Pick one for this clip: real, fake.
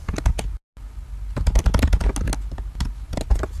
real